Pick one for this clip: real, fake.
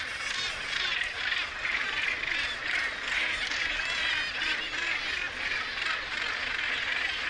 real